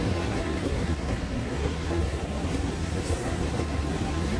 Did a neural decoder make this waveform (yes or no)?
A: yes